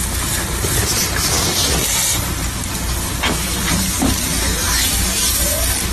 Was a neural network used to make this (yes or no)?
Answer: no